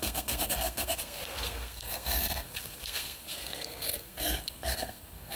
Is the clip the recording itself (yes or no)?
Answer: no